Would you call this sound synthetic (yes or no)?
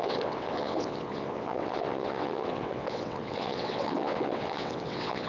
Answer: yes